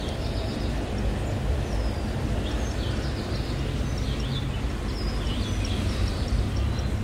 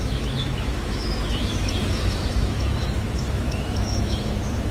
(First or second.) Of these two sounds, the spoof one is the second